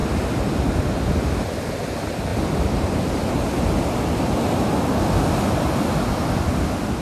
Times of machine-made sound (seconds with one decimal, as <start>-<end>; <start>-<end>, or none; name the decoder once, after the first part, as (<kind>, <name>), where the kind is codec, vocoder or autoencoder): 2.3-3.6 (vocoder, BigVGAN v2)